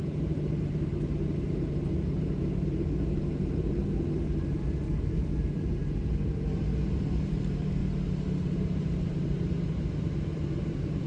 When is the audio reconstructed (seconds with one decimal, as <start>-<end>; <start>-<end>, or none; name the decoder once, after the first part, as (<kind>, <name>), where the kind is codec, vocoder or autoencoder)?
0.0-0.9 (vocoder, BigVGAN v2); 1.4-3.8; 4.4-7.8; 8.4-11.1

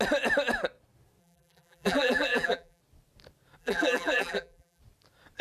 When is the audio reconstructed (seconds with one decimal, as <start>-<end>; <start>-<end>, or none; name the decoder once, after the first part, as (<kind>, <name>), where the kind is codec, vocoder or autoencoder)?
1.2-2.8 (vocoder, BigVGAN v2); 3.6-4.8

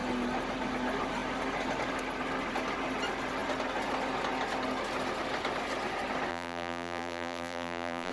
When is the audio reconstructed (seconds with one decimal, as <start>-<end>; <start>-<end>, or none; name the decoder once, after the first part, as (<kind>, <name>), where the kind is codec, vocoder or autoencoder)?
6.3-8.1 (vocoder, BigVGAN v2)

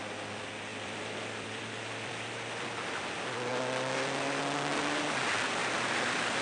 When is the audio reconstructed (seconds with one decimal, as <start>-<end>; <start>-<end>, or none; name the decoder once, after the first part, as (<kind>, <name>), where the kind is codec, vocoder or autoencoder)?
0.7-3.1 (vocoder, BigVGAN v2); 5.6-6.4